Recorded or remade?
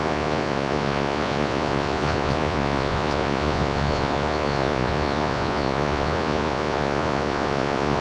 remade